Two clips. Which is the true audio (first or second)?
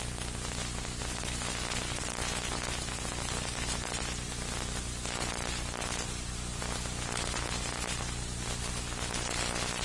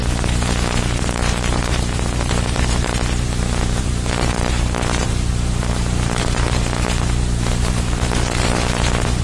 first